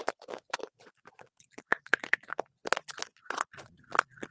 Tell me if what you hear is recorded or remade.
remade